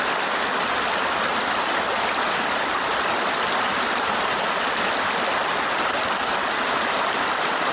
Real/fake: real